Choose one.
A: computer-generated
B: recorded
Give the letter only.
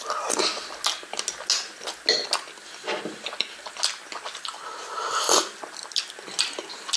B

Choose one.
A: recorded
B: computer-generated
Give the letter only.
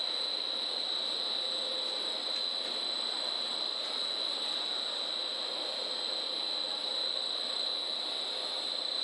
A